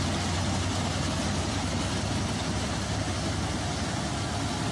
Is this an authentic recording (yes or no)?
yes